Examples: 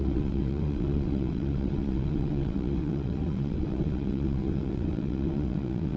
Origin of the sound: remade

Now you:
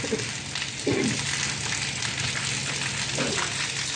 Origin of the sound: recorded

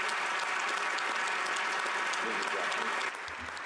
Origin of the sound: recorded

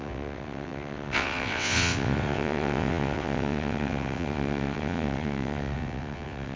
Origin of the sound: remade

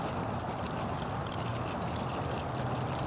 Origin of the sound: recorded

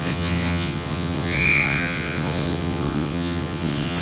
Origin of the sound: remade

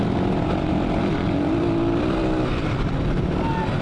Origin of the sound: recorded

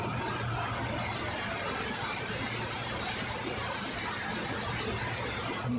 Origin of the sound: recorded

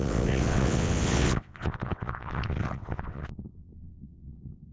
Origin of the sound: remade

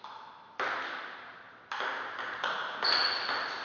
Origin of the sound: recorded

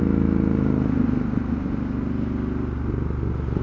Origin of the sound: recorded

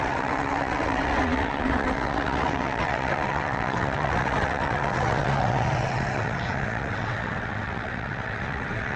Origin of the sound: remade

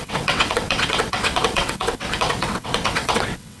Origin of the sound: remade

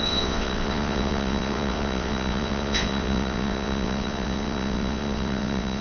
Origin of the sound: remade